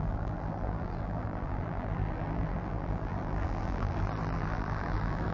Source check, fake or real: fake